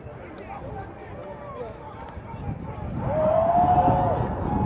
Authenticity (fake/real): real